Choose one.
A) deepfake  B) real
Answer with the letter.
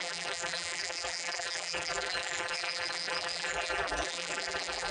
A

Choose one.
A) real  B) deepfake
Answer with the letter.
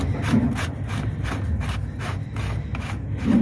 A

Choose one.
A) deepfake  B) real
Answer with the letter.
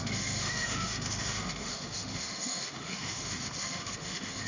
A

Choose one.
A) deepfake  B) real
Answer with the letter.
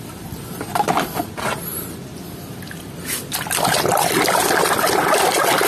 B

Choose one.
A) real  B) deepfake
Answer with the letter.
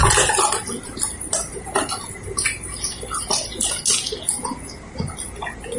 A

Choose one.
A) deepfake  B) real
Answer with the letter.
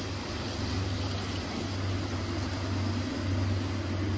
B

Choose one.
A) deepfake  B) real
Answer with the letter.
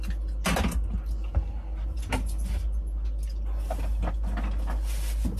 B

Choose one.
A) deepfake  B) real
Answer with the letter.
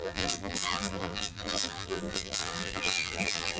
A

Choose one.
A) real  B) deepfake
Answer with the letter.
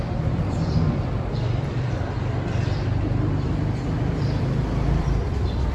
B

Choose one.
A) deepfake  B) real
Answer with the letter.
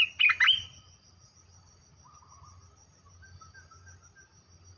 B